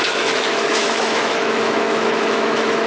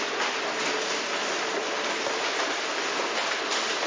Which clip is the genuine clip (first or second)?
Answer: second